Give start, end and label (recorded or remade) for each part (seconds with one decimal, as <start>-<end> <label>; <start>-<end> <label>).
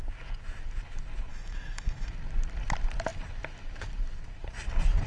0.0-1.3 recorded; 1.3-2.1 remade; 2.1-5.1 recorded